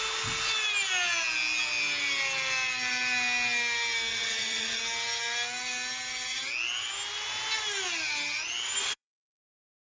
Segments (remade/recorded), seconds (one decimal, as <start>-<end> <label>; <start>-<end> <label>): 0.0-4.1 recorded; 4.1-4.8 remade; 4.8-8.8 recorded; 8.8-9.4 remade; 9.4-9.8 recorded